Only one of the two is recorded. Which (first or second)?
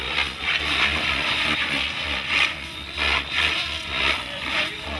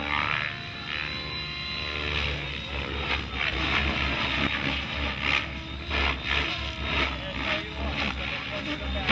second